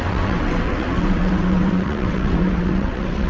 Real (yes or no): no